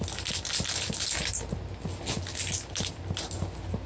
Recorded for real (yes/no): yes